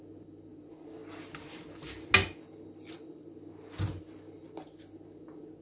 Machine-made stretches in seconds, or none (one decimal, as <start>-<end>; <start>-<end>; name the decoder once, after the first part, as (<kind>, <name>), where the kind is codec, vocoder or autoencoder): none